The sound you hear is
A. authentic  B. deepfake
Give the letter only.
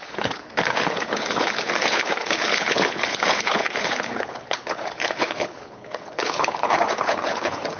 B